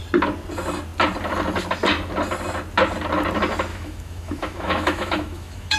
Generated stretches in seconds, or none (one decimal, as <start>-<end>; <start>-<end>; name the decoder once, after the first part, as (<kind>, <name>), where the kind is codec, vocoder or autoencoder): 3.7-5.8 (autoencoder, DAC-VAE)